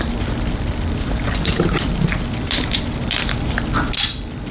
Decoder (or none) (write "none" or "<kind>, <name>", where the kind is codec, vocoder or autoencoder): vocoder, BigVGAN v2